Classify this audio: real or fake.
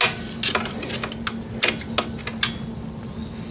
real